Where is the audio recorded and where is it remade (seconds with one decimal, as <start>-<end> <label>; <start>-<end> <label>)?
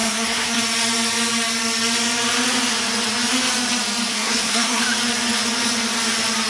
0.0-0.6 remade; 0.6-4.1 recorded; 4.1-4.8 remade; 4.8-6.5 recorded